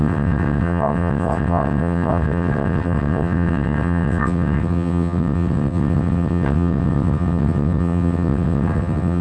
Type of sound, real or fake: fake